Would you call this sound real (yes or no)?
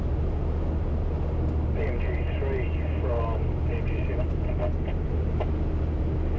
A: yes